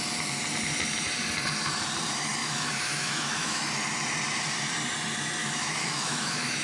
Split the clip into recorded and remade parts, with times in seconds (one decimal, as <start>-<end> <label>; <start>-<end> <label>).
0.0-2.4 recorded; 2.4-3.6 remade; 3.6-5.4 recorded; 5.4-6.6 remade